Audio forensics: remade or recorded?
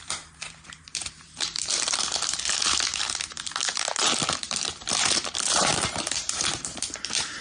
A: remade